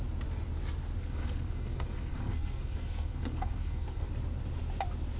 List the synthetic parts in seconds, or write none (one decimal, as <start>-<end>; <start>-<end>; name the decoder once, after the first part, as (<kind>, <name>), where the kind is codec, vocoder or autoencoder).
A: 1.0-4.1 (codec, SNAC)